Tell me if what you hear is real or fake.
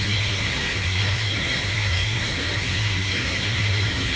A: fake